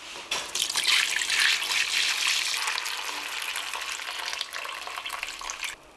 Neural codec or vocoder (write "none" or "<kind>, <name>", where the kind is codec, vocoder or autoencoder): none